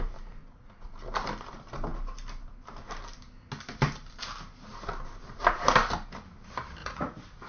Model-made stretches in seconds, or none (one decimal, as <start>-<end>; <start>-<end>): 0.4-0.9; 6.8-7.5